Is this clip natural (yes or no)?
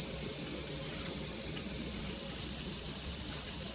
no